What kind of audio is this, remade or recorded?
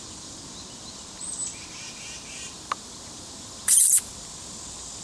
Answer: remade